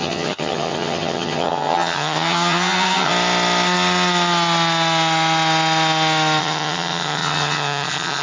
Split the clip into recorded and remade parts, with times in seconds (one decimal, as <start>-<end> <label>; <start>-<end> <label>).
0.0-3.1 remade; 3.1-6.4 recorded; 6.4-8.2 remade